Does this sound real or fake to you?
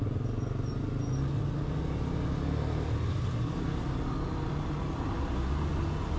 real